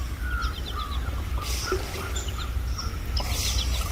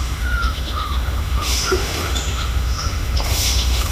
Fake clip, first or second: second